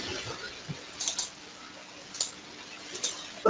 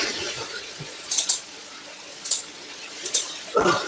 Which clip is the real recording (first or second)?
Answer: first